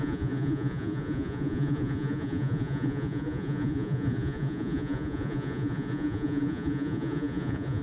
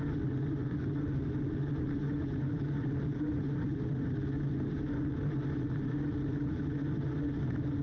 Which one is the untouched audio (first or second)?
second